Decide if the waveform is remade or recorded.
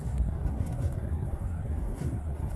remade